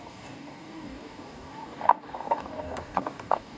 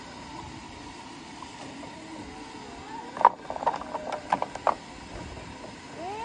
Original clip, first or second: second